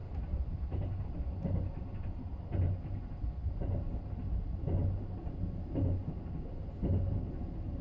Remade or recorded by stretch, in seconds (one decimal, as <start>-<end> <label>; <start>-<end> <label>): 0.0-1.3 remade; 1.3-7.8 recorded